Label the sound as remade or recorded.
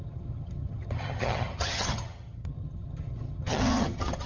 remade